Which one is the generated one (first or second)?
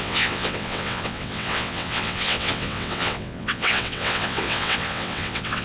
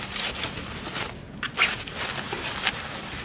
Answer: first